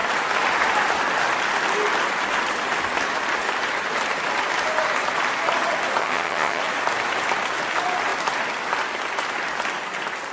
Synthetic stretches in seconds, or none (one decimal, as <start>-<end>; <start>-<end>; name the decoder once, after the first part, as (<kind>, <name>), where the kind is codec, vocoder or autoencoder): 6.0-6.6 (vocoder, HiFi-GAN)